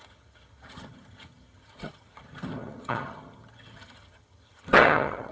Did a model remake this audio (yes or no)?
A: yes